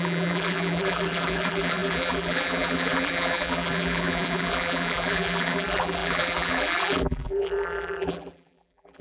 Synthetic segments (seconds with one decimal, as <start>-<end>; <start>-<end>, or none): 0.0-9.0